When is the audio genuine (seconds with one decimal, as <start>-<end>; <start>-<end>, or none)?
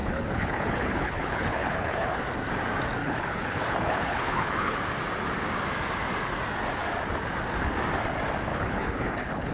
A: 2.2-3.0; 4.8-8.5